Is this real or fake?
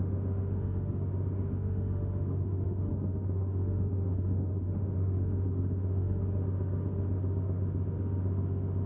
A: fake